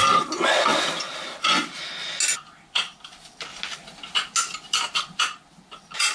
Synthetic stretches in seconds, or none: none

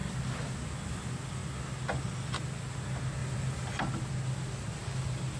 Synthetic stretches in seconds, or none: 3.2-3.8 (vocoder, BigVGAN v2)

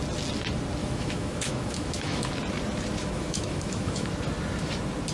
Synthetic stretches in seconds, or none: 0.8-2.3 (autoencoder, DAC-VAE); 3.0-4.1

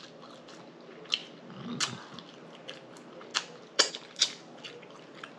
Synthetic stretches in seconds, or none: none

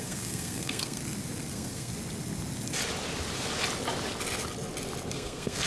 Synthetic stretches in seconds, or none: 0.0-1.0 (codec, SNAC); 1.5-1.9; 5.1-5.7